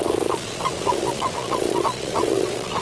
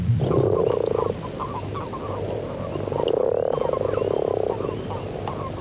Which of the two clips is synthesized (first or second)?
first